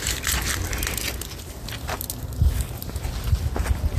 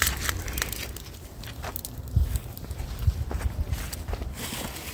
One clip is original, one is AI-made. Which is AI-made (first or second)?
second